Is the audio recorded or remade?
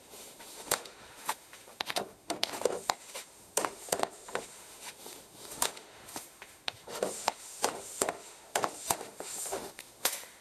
remade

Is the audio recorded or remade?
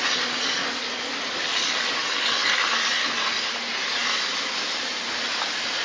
recorded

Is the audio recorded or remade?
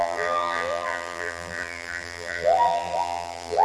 remade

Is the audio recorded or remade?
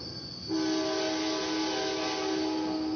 recorded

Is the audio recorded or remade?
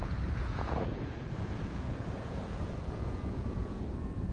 remade